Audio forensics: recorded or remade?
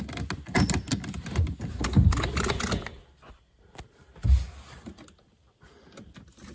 recorded